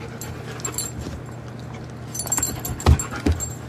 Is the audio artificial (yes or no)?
no